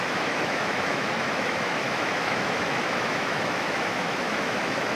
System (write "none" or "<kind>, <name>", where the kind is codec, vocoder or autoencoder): autoencoder, DAC-VAE